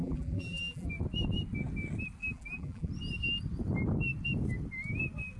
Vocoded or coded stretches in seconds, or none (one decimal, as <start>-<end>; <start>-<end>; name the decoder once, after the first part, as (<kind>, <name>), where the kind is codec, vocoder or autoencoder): 0.0-0.9 (vocoder, BigVGAN v2); 2.2-2.9